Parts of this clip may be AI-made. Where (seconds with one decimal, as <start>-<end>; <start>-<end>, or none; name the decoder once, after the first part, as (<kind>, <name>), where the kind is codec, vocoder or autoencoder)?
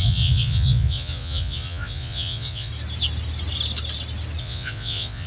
0.0-2.7 (vocoder, Vocos); 4.4-5.3